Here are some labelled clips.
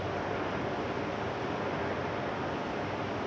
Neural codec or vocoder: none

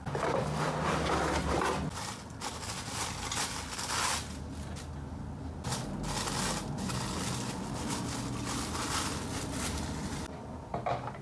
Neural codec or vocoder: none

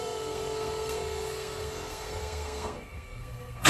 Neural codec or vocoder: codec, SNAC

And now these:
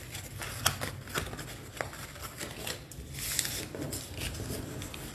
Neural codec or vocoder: none